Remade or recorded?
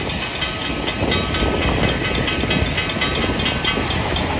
recorded